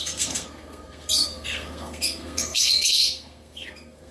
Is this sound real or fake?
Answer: fake